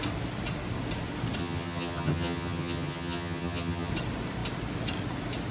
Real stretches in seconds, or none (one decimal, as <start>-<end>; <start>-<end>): 0.0-1.4; 3.9-5.5